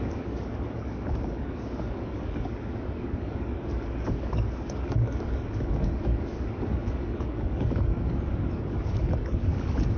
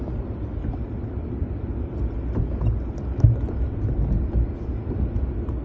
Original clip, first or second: second